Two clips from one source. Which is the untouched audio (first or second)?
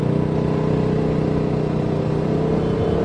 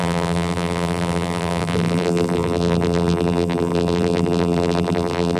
first